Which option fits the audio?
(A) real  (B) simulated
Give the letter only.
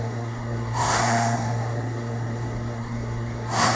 B